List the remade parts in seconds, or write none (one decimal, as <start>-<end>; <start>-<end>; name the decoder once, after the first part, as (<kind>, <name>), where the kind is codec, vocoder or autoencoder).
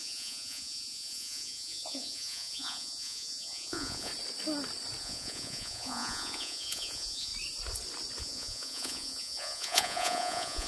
0.0-4.1 (vocoder, Vocos); 5.0-7.3; 8.2-10.7